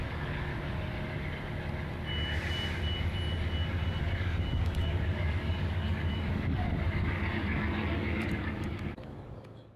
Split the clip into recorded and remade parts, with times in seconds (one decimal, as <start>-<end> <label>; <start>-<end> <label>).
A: 0.0-0.5 remade; 0.5-4.0 recorded; 4.0-9.8 remade